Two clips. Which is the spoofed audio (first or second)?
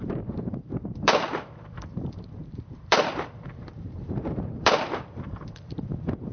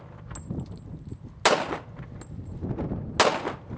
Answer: first